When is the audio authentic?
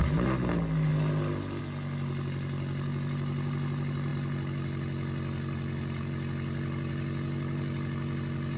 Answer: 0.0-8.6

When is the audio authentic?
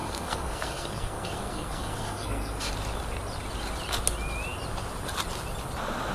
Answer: 2.7-6.1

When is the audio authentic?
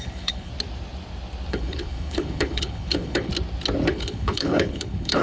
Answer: 0.5-1.5; 3.3-3.9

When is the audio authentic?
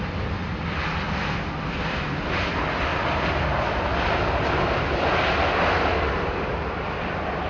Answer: 0.0-7.5